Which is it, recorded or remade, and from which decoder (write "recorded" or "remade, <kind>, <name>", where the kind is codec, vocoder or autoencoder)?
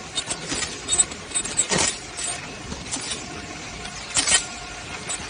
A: recorded